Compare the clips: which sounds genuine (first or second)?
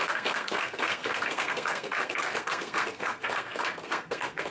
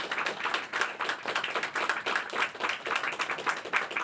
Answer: second